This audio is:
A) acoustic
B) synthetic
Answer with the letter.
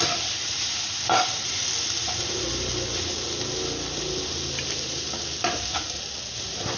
A